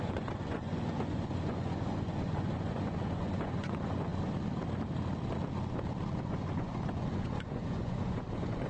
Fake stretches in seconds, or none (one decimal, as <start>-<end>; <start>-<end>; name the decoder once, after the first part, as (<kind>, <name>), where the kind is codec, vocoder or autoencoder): 0.0-4.1 (vocoder, Vocos); 6.2-8.7